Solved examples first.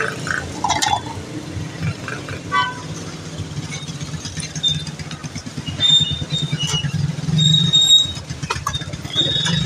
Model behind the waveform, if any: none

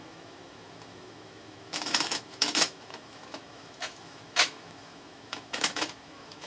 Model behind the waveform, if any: autoencoder, DAC-VAE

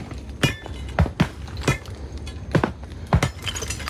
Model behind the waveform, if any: none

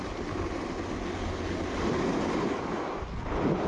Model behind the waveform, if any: none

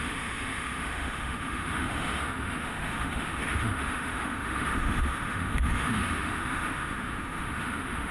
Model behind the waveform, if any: autoencoder, DAC-VAE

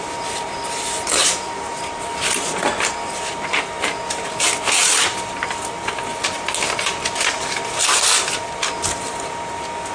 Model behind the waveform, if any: none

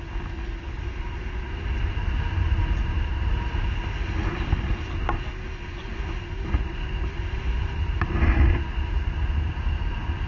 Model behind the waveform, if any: none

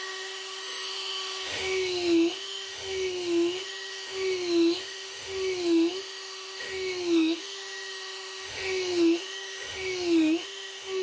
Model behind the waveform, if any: autoencoder, DAC-VAE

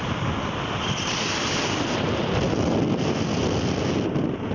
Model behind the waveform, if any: none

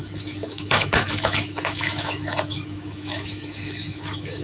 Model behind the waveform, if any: autoencoder, DAC-VAE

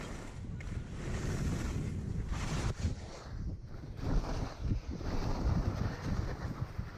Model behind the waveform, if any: none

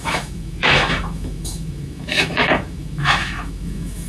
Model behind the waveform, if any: autoencoder, DAC-VAE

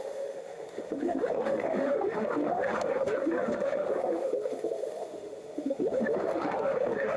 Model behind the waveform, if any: autoencoder, DAC-VAE